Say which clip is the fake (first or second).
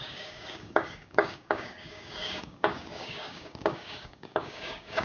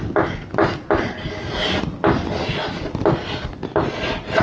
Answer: first